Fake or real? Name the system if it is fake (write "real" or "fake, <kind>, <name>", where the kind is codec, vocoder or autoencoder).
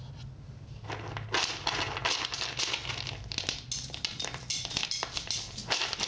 real